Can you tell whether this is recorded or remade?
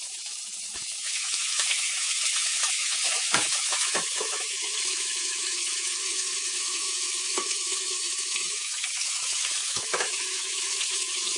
remade